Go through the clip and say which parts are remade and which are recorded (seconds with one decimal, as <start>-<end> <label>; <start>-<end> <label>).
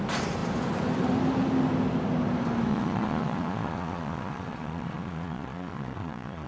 0.0-2.7 recorded; 2.7-6.5 remade